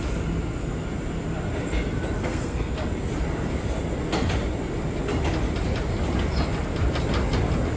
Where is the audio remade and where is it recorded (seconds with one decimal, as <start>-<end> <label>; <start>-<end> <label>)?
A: 0.0-2.2 recorded; 2.2-2.7 remade; 2.7-7.8 recorded